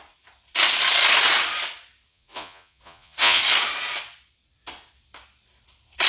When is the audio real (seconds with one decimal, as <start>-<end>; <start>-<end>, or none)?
0.0-2.1; 3.4-6.1